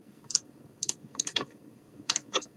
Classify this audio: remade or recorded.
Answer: remade